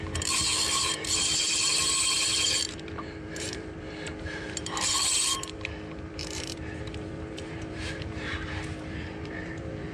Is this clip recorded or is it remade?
remade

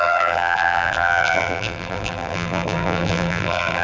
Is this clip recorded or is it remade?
remade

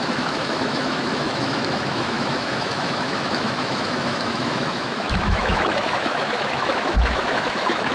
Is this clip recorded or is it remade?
remade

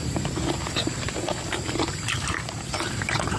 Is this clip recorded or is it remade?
remade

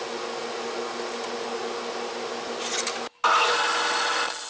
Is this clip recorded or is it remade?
recorded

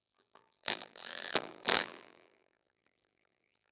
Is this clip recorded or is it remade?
remade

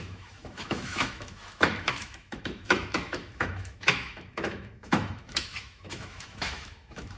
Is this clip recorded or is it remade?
remade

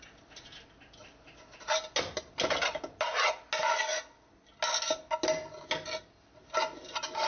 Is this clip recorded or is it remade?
recorded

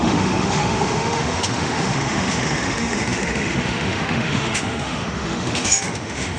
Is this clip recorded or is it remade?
remade